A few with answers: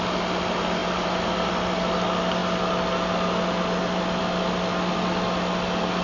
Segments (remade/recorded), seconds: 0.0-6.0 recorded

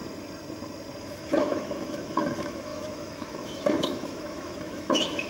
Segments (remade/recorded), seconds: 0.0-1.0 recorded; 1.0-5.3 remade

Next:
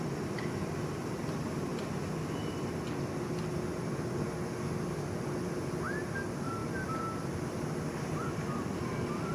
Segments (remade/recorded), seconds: 0.0-9.3 recorded

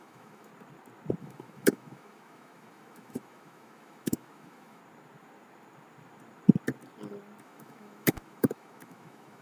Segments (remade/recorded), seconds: 0.0-0.5 remade; 0.5-1.2 recorded; 1.2-4.8 remade; 4.8-7.4 recorded; 7.4-9.4 remade